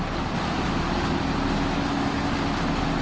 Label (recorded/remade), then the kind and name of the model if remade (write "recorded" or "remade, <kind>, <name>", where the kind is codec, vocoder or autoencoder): recorded